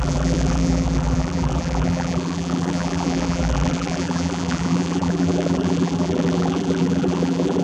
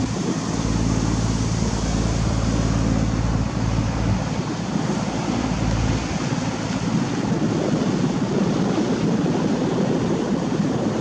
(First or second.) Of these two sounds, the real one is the second